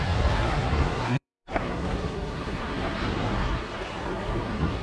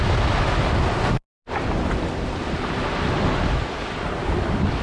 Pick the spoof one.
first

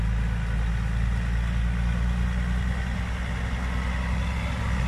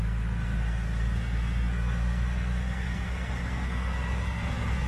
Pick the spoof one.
second